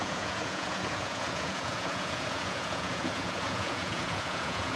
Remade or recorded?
remade